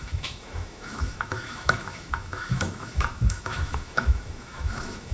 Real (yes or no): no